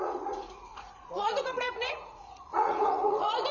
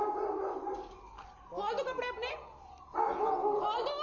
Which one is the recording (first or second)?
second